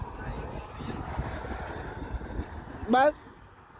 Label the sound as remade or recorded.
recorded